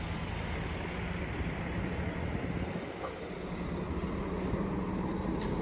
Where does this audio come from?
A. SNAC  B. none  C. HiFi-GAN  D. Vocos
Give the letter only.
B